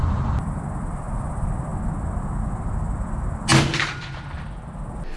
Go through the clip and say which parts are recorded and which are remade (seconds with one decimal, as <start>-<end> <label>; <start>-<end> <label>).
0.0-5.2 recorded